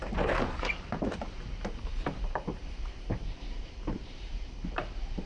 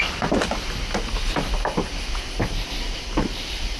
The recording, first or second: second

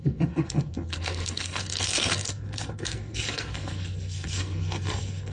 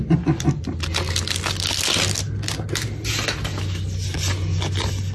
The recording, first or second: second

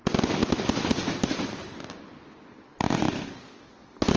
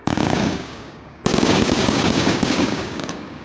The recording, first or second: first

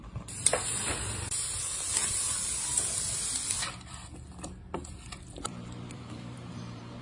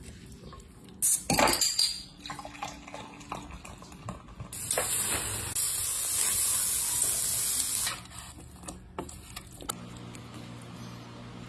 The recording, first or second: second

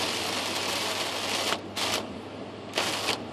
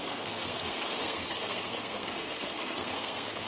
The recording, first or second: first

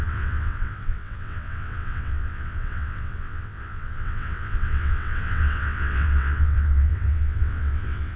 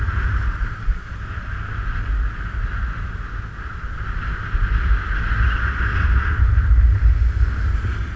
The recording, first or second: second